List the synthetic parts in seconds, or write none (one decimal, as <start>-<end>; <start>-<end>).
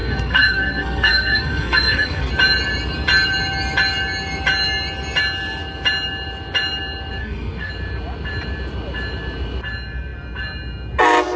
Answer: 0.0-2.3; 7.2-7.7